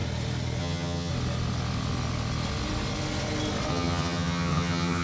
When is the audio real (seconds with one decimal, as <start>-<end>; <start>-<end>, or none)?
0.0-0.6; 1.1-3.7

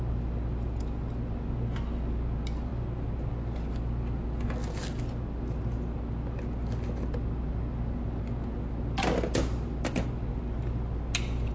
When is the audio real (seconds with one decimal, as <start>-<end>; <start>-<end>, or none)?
0.0-11.5

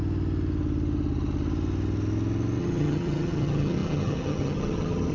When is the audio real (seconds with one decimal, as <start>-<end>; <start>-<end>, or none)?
0.0-2.6

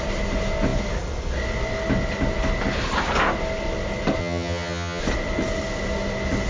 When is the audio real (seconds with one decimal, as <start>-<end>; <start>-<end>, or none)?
0.0-4.2; 5.0-6.5

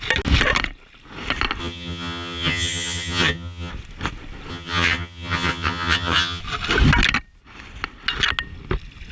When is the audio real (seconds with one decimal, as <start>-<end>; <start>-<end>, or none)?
0.0-1.6; 3.7-4.5; 6.4-9.1